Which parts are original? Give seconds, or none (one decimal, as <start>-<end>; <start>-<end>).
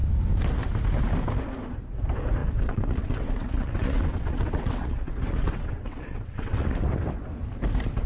0.0-2.4; 6.9-8.1